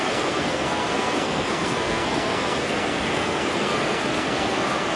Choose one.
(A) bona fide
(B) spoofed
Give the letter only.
B